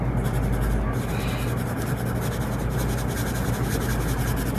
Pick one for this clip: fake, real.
real